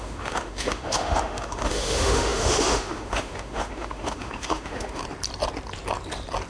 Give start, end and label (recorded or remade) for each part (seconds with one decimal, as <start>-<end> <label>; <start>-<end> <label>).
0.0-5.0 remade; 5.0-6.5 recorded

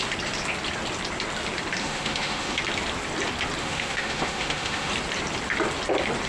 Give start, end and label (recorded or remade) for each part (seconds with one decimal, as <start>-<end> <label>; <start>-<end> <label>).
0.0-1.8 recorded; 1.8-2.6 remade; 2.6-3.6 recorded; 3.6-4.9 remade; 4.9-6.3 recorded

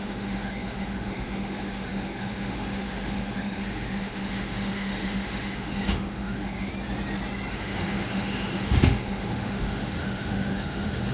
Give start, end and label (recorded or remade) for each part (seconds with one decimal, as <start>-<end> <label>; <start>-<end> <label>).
0.0-6.7 remade; 6.7-7.5 recorded; 7.5-11.1 remade

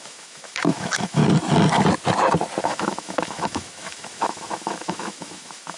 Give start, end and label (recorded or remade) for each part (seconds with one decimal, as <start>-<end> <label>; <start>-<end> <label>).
0.0-1.2 remade; 1.2-2.6 recorded; 2.6-5.8 remade

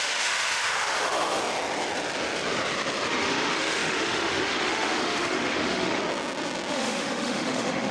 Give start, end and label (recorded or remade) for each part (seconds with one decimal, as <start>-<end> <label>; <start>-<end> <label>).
0.0-1.4 remade; 1.4-3.1 recorded; 3.1-6.0 remade; 6.0-6.7 recorded; 6.7-7.9 remade